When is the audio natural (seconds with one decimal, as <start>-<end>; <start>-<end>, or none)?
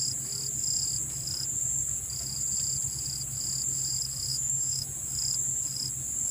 0.0-4.3; 4.9-6.3